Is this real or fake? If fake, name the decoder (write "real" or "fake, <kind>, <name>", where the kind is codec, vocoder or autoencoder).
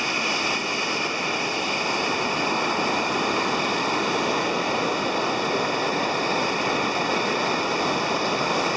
real